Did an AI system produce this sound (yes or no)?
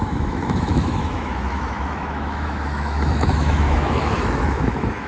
yes